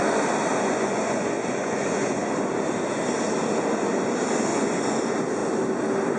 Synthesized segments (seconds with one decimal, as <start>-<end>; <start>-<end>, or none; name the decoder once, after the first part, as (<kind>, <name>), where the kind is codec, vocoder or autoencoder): 0.5-2.5 (vocoder, Vocos); 4.5-5.0